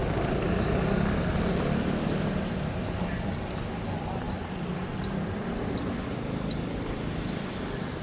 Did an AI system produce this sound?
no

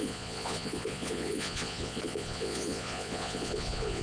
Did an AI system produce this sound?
yes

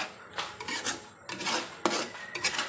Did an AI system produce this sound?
no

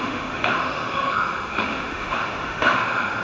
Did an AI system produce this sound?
yes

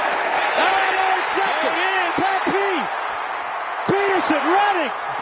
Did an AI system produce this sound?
no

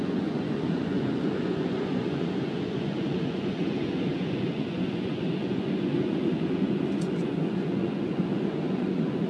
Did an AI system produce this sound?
yes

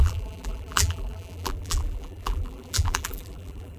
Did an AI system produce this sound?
yes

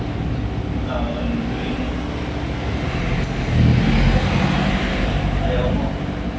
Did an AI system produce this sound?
no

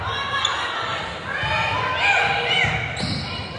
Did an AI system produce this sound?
no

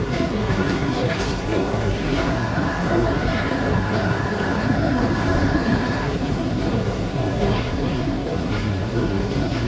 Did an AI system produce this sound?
yes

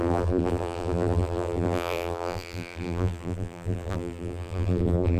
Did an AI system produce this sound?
yes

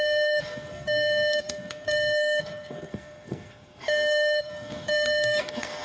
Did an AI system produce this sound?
yes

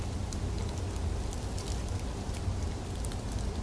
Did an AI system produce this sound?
yes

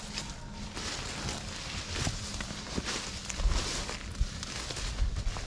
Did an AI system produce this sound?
no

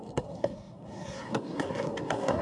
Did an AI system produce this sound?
yes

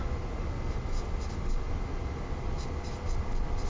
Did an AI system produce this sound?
no